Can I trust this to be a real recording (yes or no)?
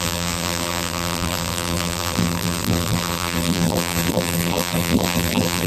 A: no